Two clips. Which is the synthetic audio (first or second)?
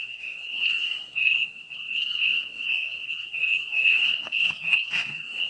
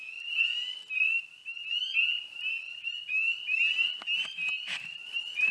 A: first